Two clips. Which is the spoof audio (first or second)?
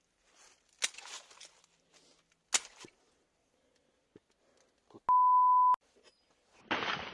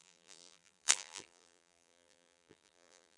second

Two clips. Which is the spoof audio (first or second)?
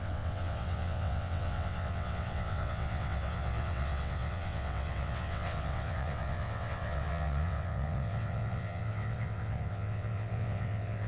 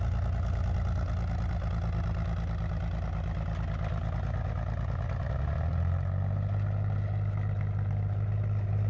first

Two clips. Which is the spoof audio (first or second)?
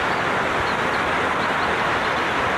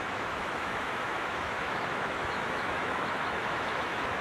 second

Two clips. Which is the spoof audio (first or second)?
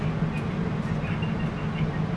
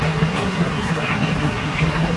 second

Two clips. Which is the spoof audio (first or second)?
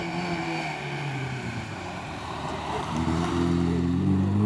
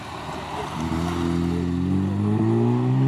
first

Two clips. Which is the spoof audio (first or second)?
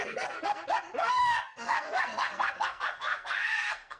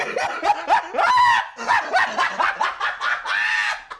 first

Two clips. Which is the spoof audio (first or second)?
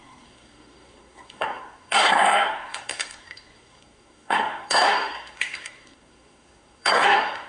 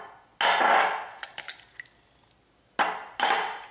first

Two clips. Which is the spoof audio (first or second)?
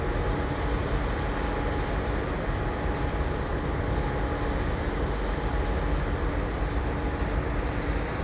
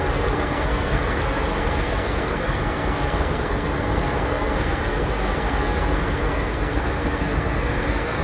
second